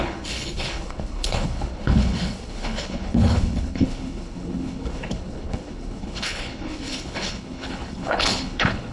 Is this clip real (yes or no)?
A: no